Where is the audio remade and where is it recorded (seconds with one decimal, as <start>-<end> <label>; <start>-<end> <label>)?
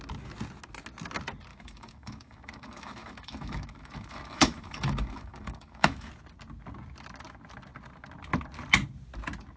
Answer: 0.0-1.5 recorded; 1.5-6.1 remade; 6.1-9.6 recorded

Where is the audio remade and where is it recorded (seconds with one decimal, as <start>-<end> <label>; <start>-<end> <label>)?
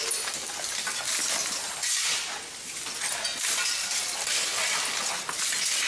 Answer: 0.0-5.9 recorded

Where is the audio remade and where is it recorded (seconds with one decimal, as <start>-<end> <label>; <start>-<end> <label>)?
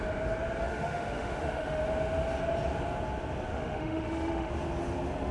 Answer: 0.0-0.6 recorded; 0.6-1.8 remade; 1.8-3.5 recorded; 3.5-4.5 remade; 4.5-5.3 recorded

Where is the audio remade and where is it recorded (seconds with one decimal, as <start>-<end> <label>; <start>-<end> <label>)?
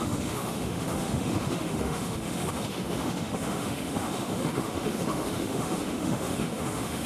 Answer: 0.0-7.1 remade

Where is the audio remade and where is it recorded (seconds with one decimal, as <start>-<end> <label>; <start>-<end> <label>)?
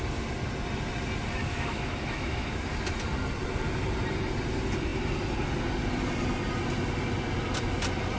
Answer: 0.0-1.4 recorded; 1.4-2.6 remade; 2.6-8.2 recorded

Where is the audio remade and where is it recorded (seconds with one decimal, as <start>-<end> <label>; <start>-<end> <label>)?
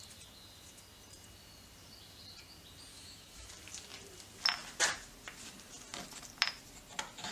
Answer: 0.0-2.9 recorded; 2.9-3.5 remade; 3.5-7.3 recorded